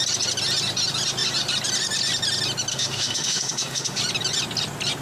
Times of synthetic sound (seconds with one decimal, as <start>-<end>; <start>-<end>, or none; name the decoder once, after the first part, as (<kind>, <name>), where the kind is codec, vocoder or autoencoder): 2.7-4.0 (autoencoder, DAC-VAE)